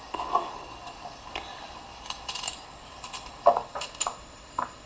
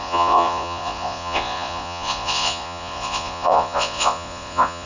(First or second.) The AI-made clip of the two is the second